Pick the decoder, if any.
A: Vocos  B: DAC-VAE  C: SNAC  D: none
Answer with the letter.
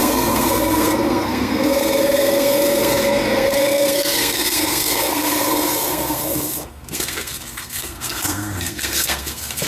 C